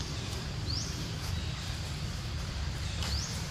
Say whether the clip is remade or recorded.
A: remade